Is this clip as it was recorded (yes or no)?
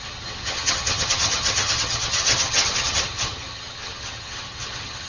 no